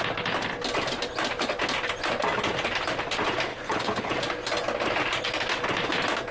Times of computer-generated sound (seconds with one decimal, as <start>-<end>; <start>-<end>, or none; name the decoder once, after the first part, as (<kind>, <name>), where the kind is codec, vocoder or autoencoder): 3.5-4.1 (codec, HILCodec)